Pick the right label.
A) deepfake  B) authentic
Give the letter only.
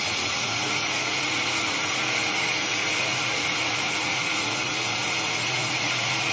A